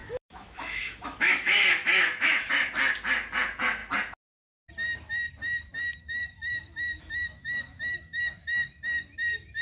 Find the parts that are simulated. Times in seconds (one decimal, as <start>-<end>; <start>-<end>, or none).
0.0-2.5; 6.0-8.2